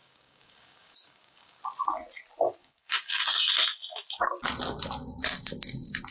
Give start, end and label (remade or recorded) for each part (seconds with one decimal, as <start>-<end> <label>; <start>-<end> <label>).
0.0-1.6 remade; 1.6-2.6 recorded; 2.6-3.5 remade; 3.5-6.1 recorded